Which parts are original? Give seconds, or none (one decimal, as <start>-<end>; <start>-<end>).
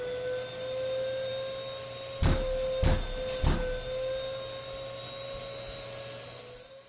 0.0-6.9